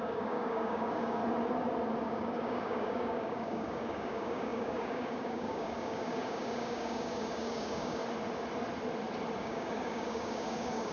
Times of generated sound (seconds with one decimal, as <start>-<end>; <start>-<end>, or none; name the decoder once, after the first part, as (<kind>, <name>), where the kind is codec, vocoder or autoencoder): 0.0-1.2 (codec, DAC); 2.0-8.0; 9.4-10.9